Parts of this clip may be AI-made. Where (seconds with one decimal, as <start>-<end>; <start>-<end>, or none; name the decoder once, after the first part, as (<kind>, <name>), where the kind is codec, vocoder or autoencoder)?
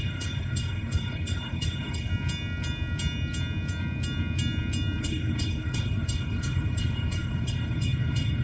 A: 0.0-2.1 (codec, HILCodec); 5.0-8.4